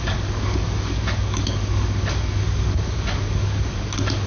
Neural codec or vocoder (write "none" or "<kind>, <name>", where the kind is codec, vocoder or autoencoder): codec, DAC